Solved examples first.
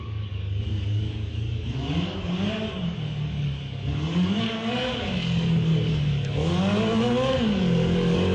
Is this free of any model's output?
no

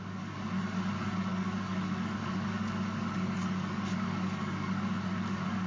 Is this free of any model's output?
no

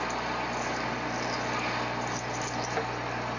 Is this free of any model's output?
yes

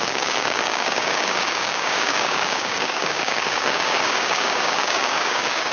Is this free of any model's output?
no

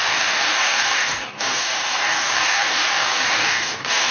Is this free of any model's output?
no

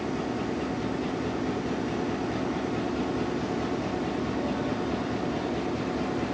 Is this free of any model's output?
yes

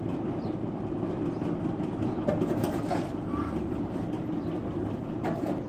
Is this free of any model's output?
yes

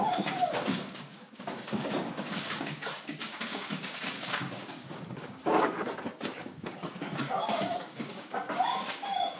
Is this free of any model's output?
no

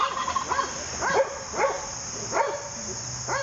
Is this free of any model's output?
yes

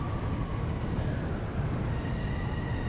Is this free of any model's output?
yes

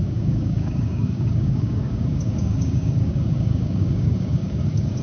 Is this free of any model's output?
no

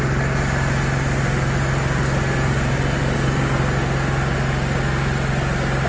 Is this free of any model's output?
yes